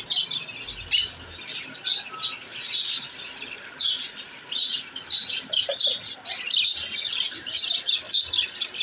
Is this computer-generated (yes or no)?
no